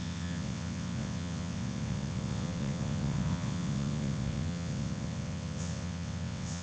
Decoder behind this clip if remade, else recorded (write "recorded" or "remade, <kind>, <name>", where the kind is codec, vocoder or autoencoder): remade, vocoder, WaveNeXt